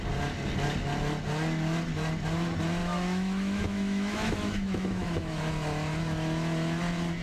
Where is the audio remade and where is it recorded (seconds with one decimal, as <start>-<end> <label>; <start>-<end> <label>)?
0.0-2.8 recorded; 2.8-5.5 remade; 5.5-7.2 recorded